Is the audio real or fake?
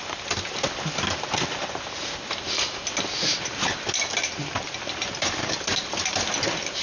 real